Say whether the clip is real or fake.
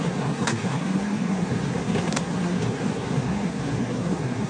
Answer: fake